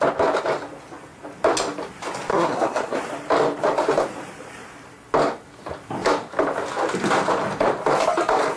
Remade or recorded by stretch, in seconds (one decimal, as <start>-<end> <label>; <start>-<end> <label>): 0.0-2.3 recorded; 2.3-3.0 remade; 3.0-8.6 recorded